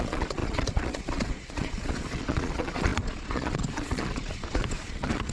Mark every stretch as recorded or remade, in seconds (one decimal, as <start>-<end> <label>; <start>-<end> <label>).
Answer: 0.0-5.3 remade

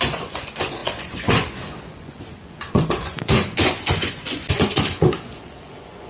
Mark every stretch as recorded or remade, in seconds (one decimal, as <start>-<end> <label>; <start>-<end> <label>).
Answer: 0.0-6.1 remade

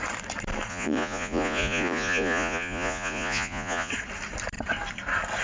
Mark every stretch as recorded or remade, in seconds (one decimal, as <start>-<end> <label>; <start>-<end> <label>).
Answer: 0.0-0.7 recorded; 0.7-3.9 remade; 3.9-5.4 recorded

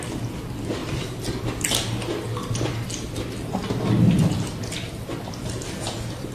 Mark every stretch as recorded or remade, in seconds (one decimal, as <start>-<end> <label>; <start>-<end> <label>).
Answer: 0.0-6.3 recorded

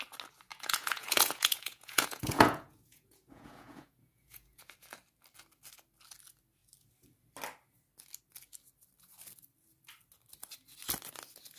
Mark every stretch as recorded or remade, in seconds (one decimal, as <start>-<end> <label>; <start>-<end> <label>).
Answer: 0.0-0.5 recorded; 0.5-4.6 remade; 4.6-11.6 recorded

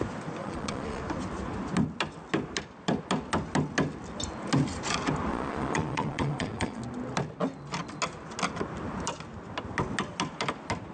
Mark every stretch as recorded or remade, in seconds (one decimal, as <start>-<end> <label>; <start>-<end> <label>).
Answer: 0.0-0.4 recorded; 0.4-1.0 remade; 1.0-5.3 recorded; 5.3-6.8 remade; 6.8-10.9 recorded

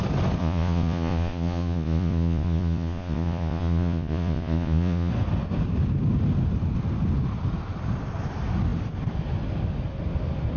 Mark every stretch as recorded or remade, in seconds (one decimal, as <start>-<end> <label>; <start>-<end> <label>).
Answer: 0.0-0.4 recorded; 0.4-5.1 remade; 5.1-10.6 recorded

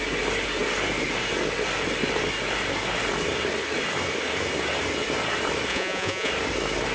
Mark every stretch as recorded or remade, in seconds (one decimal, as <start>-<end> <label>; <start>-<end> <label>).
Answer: 0.0-5.7 recorded; 5.7-6.3 remade; 6.3-6.9 recorded